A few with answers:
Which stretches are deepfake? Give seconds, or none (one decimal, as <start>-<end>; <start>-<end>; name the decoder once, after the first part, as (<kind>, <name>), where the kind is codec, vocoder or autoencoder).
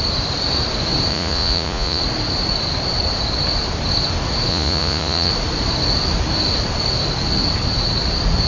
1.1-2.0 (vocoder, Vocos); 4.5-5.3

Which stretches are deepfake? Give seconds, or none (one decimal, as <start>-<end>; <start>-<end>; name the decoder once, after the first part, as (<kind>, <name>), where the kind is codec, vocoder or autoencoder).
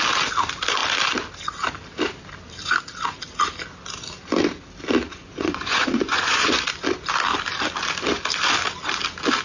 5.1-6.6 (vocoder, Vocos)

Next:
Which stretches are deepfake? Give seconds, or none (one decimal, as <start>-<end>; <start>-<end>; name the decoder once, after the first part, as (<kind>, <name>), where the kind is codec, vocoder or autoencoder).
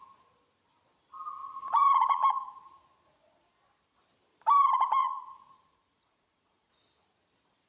1.4-2.3 (vocoder, Vocos); 5.0-6.7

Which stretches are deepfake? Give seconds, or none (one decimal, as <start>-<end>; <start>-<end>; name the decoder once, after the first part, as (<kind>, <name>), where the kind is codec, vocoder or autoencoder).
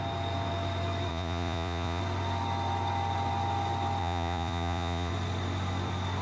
1.1-2.0 (vocoder, Vocos); 4.0-5.1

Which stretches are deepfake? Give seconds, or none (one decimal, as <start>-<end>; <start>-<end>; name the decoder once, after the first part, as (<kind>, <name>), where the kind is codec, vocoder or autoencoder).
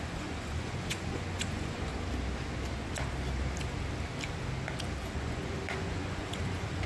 0.0-1.9 (vocoder, Vocos); 5.1-6.9